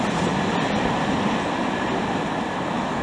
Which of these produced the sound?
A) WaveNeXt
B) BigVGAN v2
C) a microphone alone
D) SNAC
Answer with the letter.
C